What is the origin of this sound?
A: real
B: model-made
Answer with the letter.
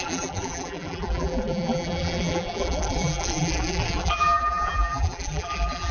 B